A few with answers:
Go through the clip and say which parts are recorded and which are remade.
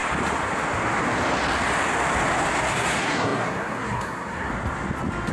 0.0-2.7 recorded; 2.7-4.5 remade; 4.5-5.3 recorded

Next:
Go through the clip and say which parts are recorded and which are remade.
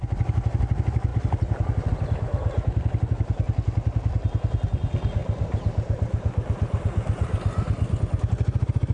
0.0-8.9 recorded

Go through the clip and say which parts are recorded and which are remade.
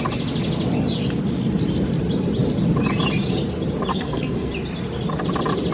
0.0-3.9 recorded; 3.9-4.5 remade; 4.5-5.7 recorded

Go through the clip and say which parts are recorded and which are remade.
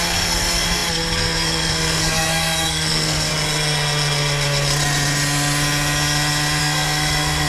0.0-3.3 remade; 3.3-6.6 recorded; 6.6-7.5 remade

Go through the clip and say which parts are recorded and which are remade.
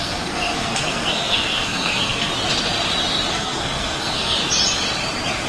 0.0-2.3 remade; 2.3-3.3 recorded; 3.3-4.4 remade; 4.4-5.5 recorded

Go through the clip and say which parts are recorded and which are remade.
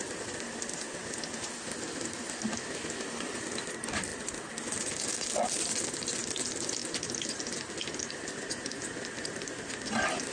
0.0-10.3 recorded